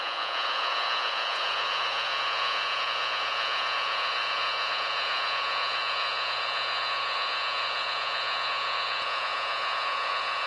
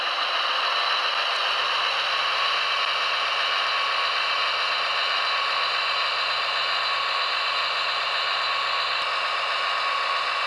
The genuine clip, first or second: second